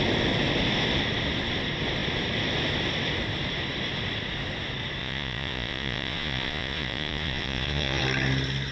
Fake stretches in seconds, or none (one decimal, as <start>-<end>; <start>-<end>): 5.0-8.0